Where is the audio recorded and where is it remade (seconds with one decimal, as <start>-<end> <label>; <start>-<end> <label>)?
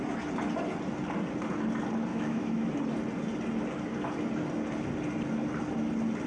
0.0-2.1 recorded; 2.1-2.7 remade; 2.7-6.3 recorded